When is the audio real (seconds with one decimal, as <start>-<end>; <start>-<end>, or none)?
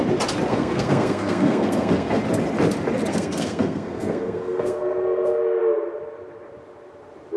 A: 0.0-0.5; 2.2-3.1; 5.6-7.4